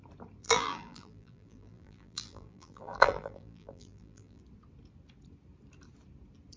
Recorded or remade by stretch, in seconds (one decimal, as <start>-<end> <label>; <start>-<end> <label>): 0.0-0.4 recorded; 0.4-4.4 remade; 4.4-6.6 recorded